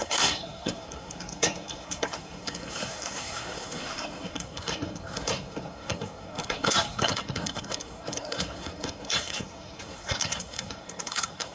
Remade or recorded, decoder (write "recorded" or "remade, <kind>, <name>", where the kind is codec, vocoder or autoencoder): remade, codec, SNAC